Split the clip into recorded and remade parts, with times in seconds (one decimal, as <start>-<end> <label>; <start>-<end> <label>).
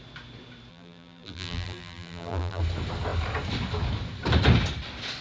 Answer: 0.0-0.7 recorded; 0.7-2.6 remade; 2.6-5.2 recorded